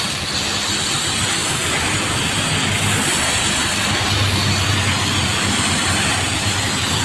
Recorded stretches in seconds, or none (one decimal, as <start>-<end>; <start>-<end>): 0.0-7.0